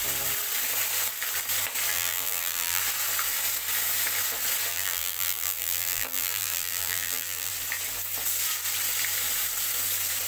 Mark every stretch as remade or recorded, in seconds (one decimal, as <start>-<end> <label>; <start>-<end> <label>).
0.0-1.9 recorded; 1.9-2.8 remade; 2.8-4.7 recorded; 4.7-7.5 remade; 7.5-10.3 recorded